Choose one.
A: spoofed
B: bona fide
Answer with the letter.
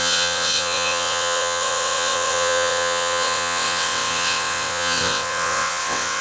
A